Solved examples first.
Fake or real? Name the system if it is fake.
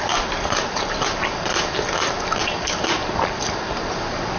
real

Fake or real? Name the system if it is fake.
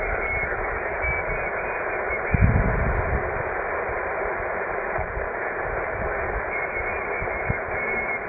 real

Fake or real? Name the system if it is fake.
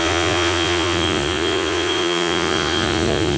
fake, vocoder, Vocos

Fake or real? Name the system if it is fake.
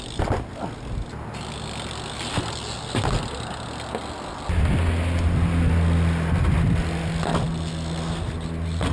real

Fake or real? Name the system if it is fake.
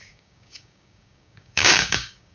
fake, codec, DAC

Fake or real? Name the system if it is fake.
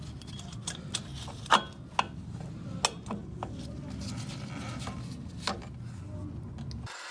real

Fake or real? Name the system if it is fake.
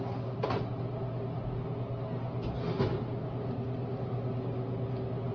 real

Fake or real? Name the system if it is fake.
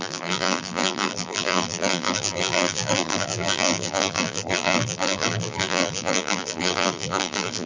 fake, vocoder, BigVGAN v2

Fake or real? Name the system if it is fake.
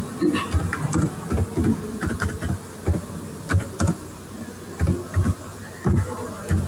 real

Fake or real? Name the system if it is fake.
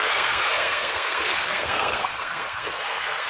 fake, codec, SNAC